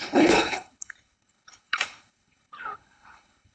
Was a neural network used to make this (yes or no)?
yes